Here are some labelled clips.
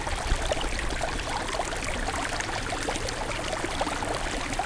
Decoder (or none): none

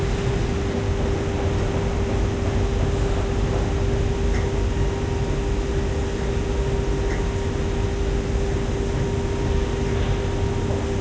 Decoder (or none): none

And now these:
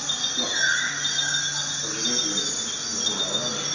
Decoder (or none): none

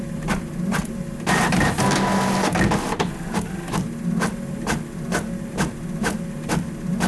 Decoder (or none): none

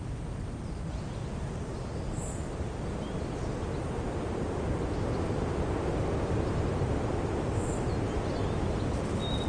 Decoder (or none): none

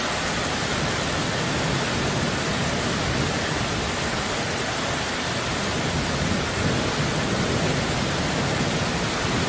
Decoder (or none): none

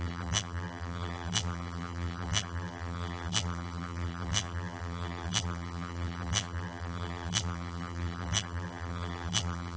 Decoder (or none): vocoder, BigVGAN v2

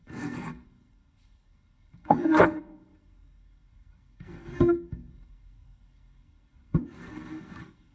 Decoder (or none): codec, SNAC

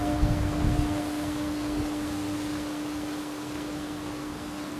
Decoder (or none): codec, SNAC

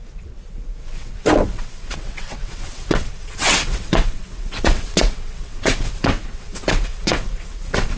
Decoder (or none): vocoder, WaveNeXt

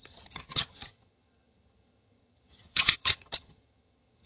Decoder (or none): vocoder, HiFi-GAN